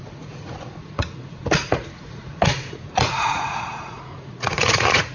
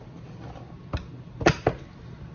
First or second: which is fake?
first